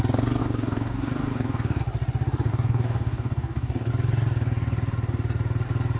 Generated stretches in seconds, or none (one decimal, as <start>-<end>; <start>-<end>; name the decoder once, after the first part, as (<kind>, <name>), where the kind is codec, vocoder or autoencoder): 0.4-1.8 (codec, DAC); 2.5-3.9